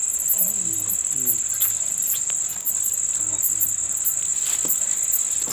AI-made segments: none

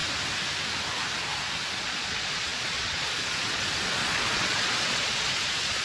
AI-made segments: 1.8-5.8 (vocoder, Vocos)

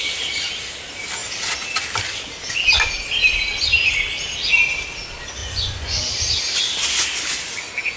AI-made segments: 5.4-6.0 (vocoder, Vocos)